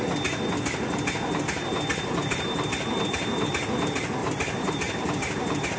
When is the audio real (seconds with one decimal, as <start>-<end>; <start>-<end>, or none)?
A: 0.0-1.9; 3.5-4.2

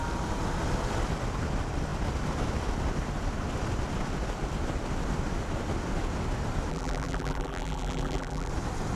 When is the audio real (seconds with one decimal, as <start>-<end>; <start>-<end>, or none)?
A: 0.0-6.7; 8.5-9.0

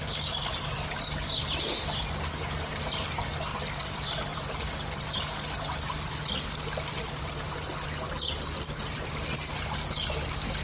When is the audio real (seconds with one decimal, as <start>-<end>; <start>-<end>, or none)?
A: 0.0-3.5; 4.7-10.6

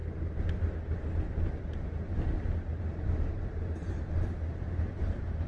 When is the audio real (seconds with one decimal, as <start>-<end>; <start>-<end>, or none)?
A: 0.0-1.6